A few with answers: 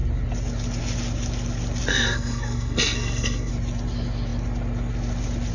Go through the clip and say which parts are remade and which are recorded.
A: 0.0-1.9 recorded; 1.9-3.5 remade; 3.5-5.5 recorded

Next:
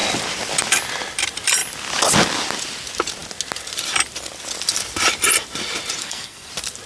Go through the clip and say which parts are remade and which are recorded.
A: 0.0-6.0 recorded; 6.0-6.5 remade; 6.5-6.9 recorded